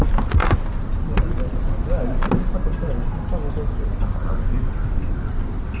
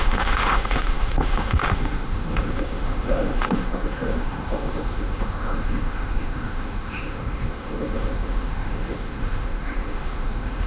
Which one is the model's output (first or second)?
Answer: second